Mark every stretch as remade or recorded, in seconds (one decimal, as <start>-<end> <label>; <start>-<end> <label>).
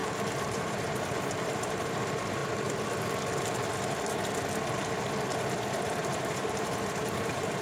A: 0.0-2.4 remade; 2.4-6.3 recorded; 6.3-7.6 remade